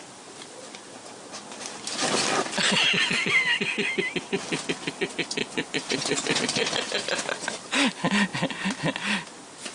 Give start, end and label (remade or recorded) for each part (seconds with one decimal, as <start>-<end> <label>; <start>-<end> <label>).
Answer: 0.0-5.4 recorded; 5.4-6.4 remade; 6.4-9.7 recorded